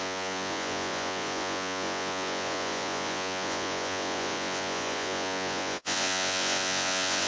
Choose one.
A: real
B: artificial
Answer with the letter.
B